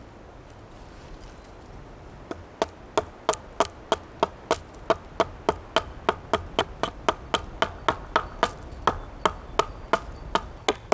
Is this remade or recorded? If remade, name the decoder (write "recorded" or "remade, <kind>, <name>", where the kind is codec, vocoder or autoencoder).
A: recorded